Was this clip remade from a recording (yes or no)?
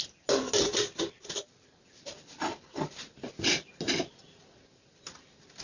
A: no